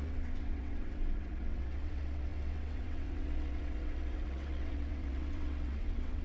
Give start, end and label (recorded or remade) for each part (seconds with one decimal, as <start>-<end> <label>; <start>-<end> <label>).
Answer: 0.0-6.2 remade